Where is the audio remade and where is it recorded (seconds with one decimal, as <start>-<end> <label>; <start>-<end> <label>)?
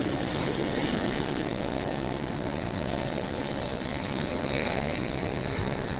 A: 0.0-6.0 remade